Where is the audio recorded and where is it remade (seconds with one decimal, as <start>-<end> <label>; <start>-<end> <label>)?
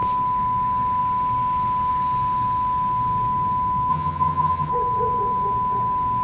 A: 0.0-3.9 recorded; 3.9-4.7 remade; 4.7-6.2 recorded